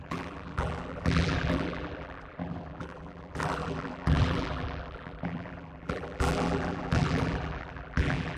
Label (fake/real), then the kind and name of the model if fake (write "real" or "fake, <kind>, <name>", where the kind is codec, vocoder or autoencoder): fake, vocoder, BigVGAN v2